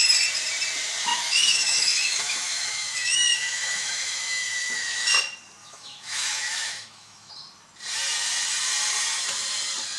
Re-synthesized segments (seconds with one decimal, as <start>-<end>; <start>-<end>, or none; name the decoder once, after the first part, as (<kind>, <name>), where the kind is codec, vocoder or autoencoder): 1.1-5.1 (autoencoder, DAC-VAE); 5.6-7.3